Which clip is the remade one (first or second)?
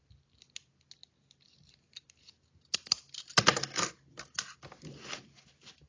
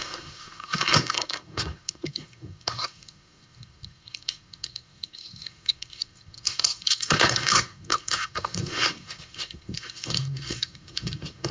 second